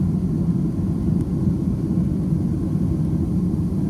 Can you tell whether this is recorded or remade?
recorded